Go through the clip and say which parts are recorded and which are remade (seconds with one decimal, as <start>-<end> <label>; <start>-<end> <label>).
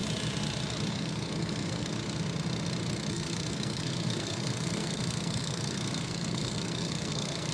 0.0-0.9 recorded; 0.9-2.0 remade; 2.0-3.1 recorded; 3.1-7.5 remade